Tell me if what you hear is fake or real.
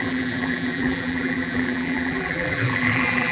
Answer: fake